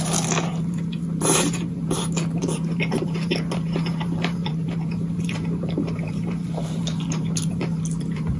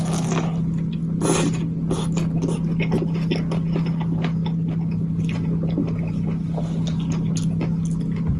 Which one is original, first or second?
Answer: second